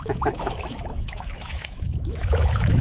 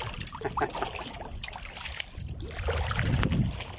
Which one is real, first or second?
second